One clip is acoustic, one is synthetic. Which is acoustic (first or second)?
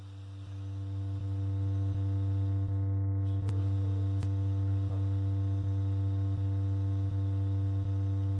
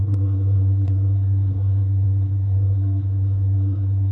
first